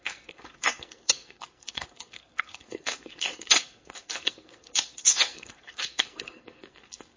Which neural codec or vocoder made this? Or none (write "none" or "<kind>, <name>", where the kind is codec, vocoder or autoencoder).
codec, SNAC